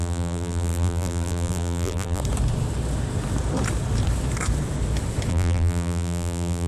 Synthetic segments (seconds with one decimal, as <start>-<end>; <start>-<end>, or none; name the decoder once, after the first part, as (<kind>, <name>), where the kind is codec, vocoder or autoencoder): 0.0-2.2 (vocoder, BigVGAN v2); 5.3-6.7